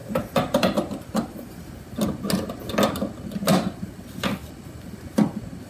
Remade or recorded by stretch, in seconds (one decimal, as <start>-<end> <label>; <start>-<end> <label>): 0.0-1.7 remade; 1.7-5.7 recorded